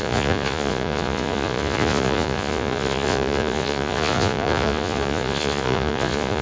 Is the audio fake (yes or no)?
yes